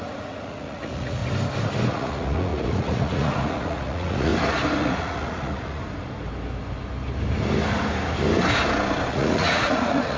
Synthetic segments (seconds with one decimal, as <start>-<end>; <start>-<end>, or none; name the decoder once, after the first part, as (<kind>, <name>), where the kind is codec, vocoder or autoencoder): 0.0-1.2 (vocoder, Vocos); 1.9-4.3; 4.8-5.8; 9.1-10.2